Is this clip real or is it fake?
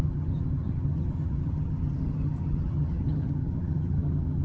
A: fake